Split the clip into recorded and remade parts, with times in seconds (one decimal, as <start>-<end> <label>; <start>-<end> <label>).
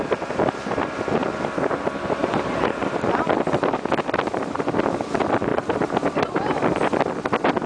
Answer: 0.0-2.2 recorded; 2.2-2.8 remade; 2.8-5.5 recorded; 5.5-6.6 remade; 6.6-7.7 recorded